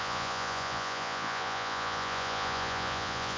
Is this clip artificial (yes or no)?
yes